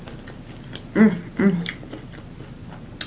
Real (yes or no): yes